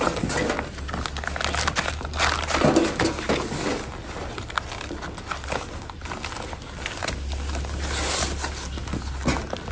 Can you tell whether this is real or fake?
real